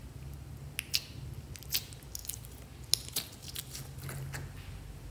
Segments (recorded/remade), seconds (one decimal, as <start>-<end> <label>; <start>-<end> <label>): 0.0-5.1 recorded